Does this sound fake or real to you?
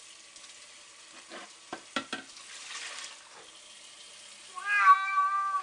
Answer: real